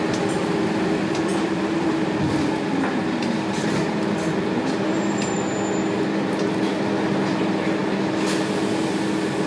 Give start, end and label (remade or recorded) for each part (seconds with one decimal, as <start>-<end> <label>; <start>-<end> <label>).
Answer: 0.0-9.5 recorded